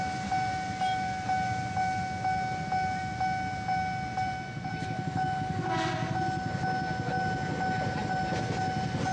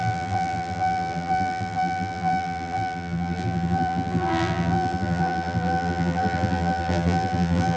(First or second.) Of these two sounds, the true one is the first